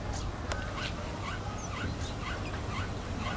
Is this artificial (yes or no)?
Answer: no